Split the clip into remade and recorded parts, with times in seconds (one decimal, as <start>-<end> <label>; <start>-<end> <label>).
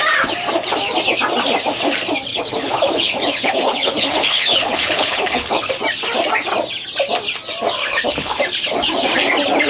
0.0-2.3 recorded; 2.3-5.7 remade; 5.7-7.8 recorded; 7.8-8.4 remade; 8.4-9.7 recorded